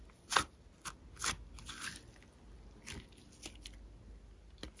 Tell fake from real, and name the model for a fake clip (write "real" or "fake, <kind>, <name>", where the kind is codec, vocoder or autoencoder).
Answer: real